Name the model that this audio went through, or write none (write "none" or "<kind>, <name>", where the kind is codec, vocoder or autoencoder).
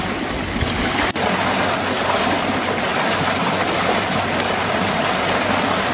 none